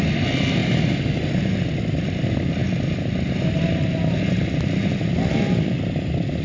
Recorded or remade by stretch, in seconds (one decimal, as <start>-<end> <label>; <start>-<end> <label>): 0.0-6.4 recorded